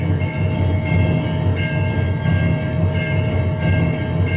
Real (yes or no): yes